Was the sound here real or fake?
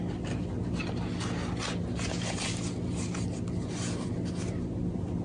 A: real